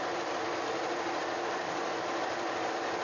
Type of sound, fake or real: real